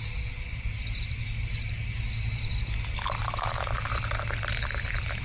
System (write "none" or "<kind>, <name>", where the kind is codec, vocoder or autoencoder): none